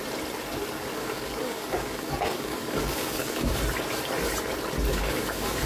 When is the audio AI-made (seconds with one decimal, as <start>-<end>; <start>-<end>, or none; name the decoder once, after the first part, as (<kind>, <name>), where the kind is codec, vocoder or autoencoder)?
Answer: 0.9-3.6 (codec, DAC); 4.9-5.7